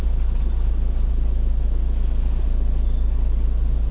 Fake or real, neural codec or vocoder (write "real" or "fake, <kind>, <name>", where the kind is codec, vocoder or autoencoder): real